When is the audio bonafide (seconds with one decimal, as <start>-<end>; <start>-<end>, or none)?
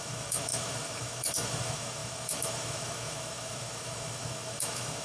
none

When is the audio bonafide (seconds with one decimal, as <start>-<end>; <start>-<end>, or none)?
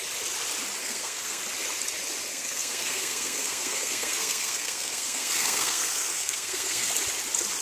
0.0-0.8; 1.4-2.3; 6.9-7.6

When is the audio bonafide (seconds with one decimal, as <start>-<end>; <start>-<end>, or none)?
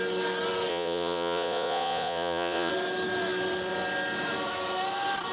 0.0-0.7; 2.7-5.3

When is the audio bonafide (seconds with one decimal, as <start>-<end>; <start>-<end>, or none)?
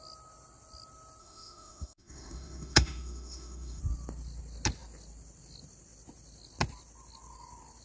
0.0-1.2; 3.8-7.8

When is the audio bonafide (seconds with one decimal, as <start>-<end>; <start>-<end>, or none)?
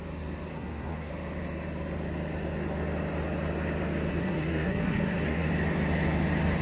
0.0-0.5; 1.1-4.1; 5.5-6.6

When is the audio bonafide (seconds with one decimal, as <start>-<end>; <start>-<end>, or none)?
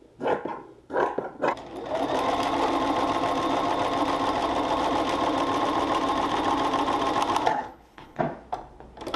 0.0-7.5; 8.2-9.2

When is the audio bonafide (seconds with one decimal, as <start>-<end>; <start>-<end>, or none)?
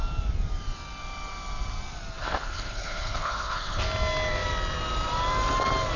0.0-2.2; 3.8-6.0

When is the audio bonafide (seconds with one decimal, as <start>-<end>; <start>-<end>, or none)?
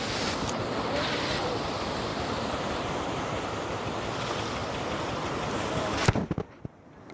0.0-2.1; 3.0-7.1